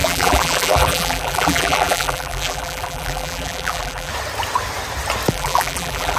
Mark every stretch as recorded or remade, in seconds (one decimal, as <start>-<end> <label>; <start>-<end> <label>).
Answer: 0.0-4.1 remade; 4.1-5.3 recorded; 5.3-6.2 remade